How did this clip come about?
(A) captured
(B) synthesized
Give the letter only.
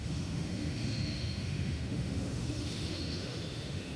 B